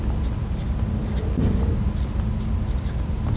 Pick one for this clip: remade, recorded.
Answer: recorded